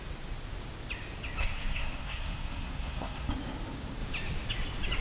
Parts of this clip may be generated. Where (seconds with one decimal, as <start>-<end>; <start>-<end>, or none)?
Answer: 1.4-3.3